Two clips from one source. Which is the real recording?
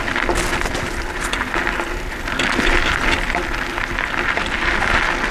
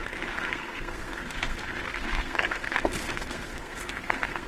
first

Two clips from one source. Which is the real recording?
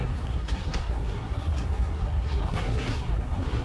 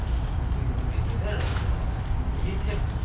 second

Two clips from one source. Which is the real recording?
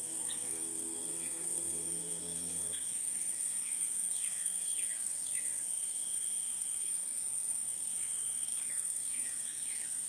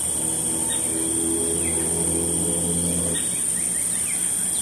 second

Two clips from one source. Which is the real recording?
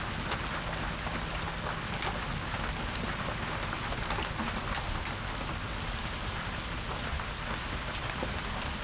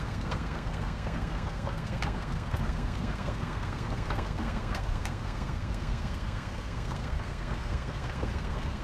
first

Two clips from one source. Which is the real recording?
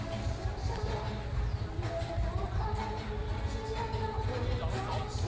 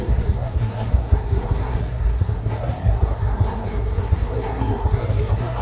first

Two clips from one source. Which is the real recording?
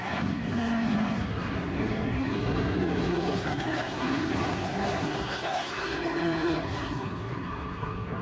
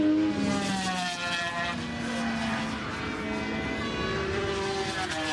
second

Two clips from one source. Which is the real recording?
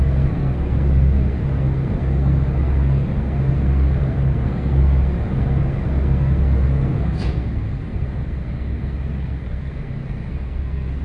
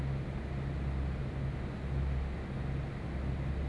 second